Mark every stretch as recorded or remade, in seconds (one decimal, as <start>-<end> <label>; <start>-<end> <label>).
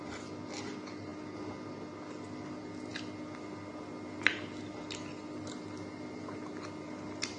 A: 0.0-7.4 recorded